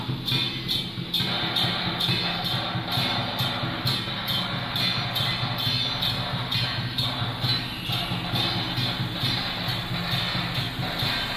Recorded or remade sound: recorded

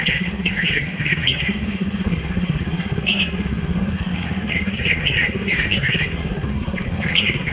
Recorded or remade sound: remade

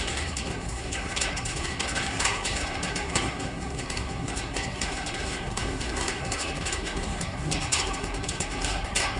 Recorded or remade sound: remade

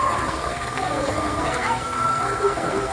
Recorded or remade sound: remade